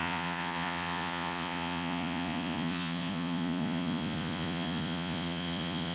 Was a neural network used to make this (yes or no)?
yes